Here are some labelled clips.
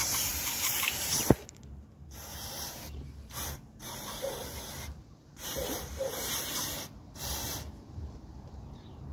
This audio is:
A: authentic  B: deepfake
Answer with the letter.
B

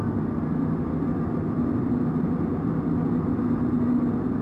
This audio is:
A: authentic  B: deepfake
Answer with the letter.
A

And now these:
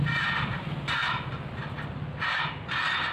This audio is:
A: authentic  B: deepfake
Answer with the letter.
A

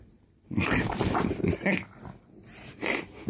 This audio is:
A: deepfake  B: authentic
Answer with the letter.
A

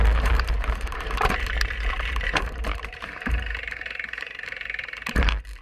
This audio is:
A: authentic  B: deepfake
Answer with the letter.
B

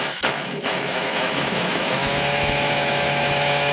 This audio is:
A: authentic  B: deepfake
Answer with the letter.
B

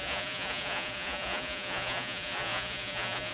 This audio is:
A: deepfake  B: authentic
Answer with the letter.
A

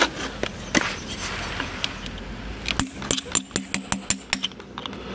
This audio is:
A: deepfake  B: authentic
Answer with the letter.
B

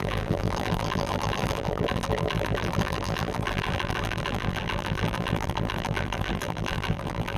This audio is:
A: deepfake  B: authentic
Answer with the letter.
A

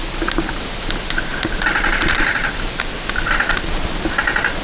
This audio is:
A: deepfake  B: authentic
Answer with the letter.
B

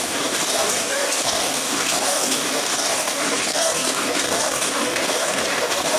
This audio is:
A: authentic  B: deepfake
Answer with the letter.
B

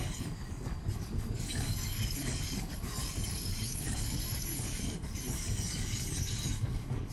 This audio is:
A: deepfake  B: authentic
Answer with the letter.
A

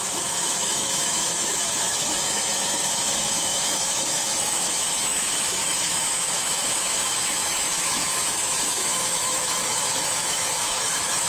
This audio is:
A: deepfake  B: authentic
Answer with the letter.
A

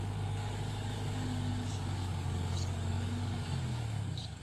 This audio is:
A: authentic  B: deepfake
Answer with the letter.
B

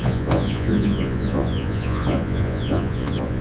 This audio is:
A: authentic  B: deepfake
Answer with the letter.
B